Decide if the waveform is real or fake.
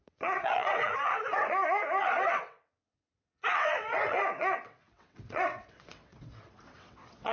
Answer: fake